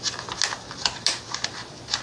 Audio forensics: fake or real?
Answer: real